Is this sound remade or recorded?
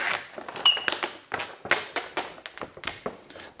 recorded